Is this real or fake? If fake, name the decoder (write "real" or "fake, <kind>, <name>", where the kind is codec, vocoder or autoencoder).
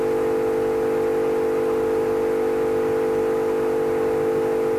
real